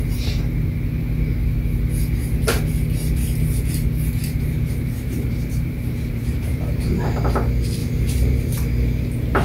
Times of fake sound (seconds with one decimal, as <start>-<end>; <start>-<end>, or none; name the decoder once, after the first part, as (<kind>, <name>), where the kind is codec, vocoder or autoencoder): 4.2-6.8 (vocoder, BigVGAN v2); 7.8-8.4